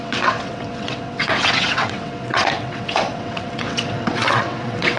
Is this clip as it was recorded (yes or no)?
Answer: no